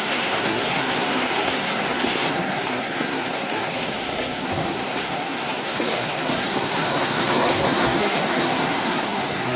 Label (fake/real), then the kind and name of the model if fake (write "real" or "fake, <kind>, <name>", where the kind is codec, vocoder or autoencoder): fake, codec, SNAC